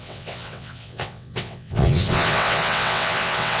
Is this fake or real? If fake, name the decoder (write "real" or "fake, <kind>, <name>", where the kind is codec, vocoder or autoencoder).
fake, vocoder, WaveNeXt